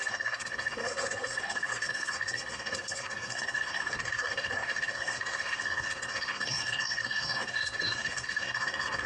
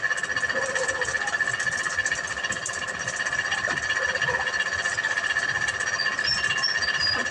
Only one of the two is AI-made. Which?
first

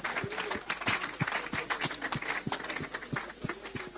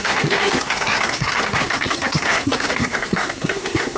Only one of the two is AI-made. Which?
second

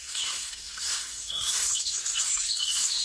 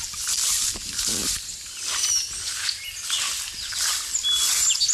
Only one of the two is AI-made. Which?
first